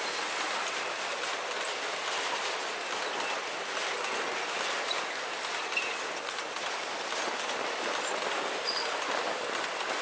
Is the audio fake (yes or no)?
no